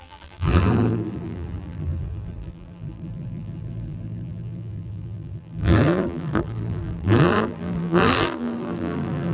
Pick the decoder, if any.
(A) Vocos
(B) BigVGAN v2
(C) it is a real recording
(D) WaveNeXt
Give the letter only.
B